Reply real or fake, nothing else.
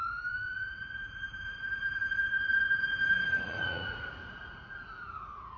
fake